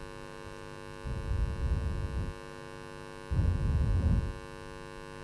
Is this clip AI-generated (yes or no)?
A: no